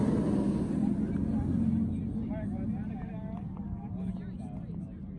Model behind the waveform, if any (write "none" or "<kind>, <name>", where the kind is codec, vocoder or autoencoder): none